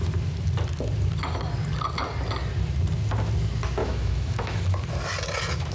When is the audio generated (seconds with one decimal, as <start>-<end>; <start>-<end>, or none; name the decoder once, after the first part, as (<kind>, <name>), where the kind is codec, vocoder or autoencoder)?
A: 3.8-4.6 (autoencoder, DAC-VAE)